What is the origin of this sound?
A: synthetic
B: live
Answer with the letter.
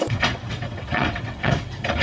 A